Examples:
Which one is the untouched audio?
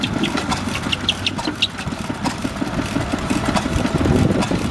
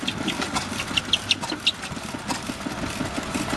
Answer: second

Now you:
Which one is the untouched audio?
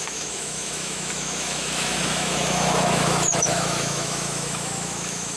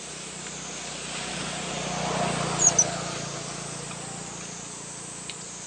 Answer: second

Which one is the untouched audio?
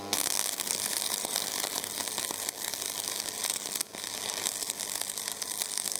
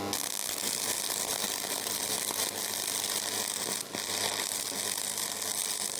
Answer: second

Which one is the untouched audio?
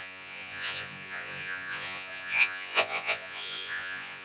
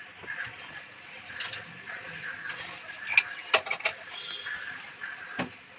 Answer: second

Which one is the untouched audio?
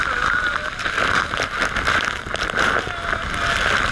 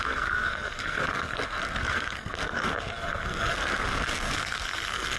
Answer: first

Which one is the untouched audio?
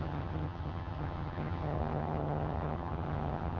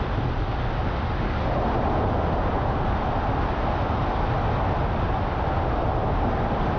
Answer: second